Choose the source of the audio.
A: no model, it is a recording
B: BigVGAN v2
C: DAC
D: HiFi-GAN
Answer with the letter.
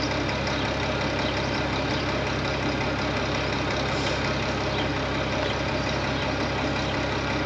B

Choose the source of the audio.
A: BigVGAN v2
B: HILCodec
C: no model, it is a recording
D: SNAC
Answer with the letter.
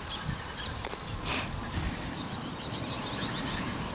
C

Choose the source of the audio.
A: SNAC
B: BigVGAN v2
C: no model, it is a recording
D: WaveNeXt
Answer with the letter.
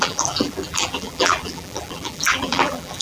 B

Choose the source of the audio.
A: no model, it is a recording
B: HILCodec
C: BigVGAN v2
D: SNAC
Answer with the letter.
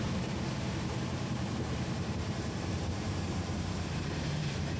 C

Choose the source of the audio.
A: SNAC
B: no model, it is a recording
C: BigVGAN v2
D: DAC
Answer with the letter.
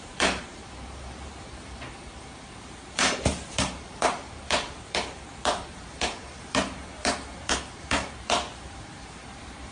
C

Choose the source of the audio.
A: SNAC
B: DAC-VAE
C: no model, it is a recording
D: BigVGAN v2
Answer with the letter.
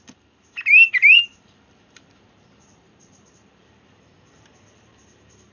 D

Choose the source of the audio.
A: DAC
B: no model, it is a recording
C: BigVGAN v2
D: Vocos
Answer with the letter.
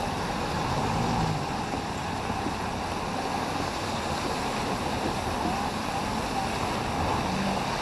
B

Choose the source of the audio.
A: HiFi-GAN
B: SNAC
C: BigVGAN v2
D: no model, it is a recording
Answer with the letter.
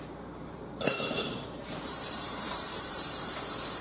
C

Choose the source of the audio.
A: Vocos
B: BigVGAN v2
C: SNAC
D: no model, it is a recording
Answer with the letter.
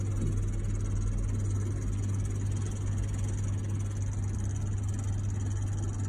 D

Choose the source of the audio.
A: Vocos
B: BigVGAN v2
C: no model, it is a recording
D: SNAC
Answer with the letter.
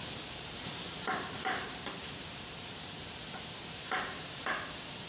B